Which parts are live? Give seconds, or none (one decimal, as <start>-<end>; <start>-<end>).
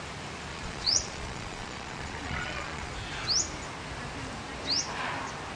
0.0-0.5; 2.9-5.6